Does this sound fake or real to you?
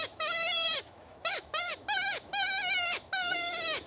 fake